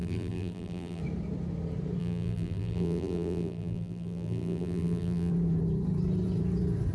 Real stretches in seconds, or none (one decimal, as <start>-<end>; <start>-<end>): 1.0-2.0; 5.3-6.9